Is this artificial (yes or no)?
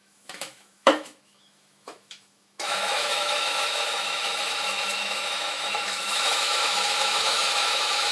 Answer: yes